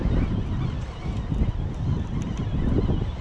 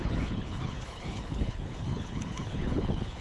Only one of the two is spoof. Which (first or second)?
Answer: second